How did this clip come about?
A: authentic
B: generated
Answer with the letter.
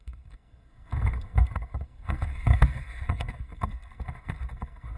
B